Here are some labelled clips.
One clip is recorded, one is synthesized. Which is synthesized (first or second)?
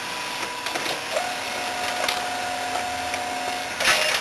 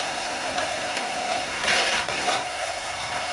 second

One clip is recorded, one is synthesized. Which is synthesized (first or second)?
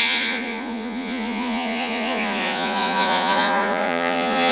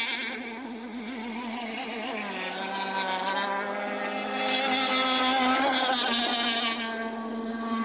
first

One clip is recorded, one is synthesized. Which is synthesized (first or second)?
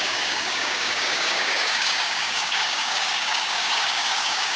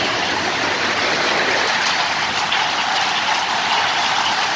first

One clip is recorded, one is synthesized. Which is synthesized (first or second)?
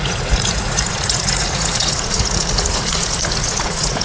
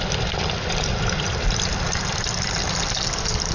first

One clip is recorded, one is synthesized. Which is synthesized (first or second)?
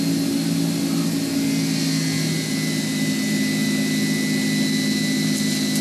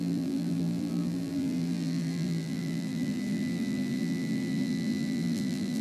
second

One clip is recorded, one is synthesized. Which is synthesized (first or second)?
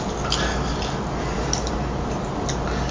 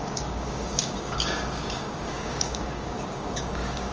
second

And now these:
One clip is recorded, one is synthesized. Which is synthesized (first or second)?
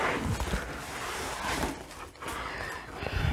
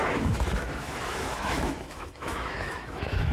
second